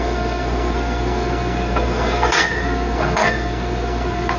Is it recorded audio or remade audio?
remade